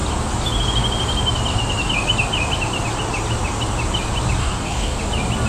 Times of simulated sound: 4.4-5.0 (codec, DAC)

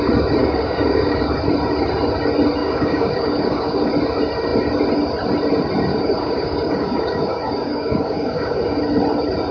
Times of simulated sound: 0.4-1.2 (codec, DAC); 2.6-3.9; 5.9-8.8

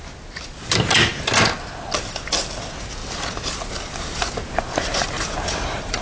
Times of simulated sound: none